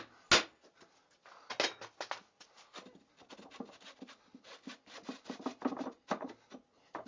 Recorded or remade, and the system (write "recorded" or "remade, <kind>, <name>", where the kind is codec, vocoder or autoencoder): recorded